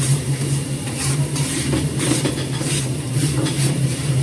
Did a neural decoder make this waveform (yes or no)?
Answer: yes